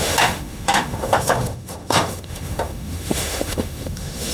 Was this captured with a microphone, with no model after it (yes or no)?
no